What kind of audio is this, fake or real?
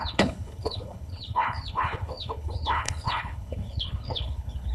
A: fake